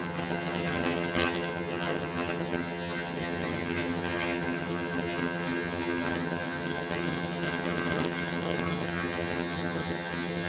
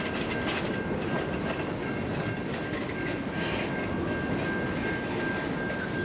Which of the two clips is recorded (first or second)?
second